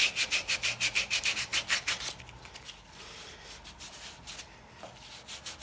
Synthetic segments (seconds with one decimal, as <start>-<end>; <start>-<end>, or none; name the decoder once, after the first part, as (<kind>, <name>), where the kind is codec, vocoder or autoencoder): none